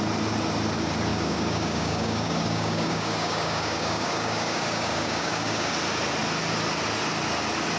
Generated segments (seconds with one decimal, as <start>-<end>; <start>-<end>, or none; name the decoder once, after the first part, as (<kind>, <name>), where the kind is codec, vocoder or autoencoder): 1.1-5.7 (codec, DAC)